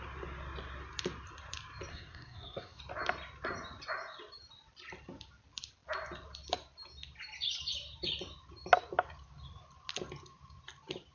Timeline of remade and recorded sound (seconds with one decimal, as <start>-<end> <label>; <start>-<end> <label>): 0.0-1.9 recorded; 1.9-2.8 remade; 2.8-11.1 recorded